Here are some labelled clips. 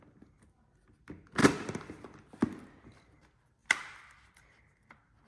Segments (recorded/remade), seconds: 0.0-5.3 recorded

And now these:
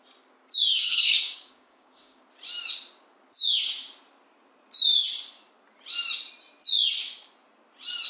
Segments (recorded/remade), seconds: 0.0-0.7 recorded; 0.7-2.2 remade; 2.2-8.1 recorded

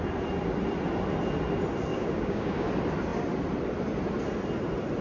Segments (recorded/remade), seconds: 0.0-1.9 recorded; 1.9-2.7 remade; 2.7-5.0 recorded

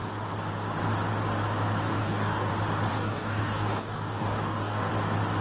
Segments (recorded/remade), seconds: 0.0-1.9 recorded; 1.9-2.5 remade; 2.5-2.9 recorded; 2.9-4.9 remade; 4.9-5.4 recorded

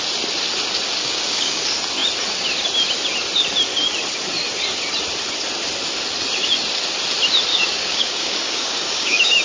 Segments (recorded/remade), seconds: 0.0-1.0 recorded; 1.0-1.6 remade; 1.6-7.5 recorded; 7.5-9.4 remade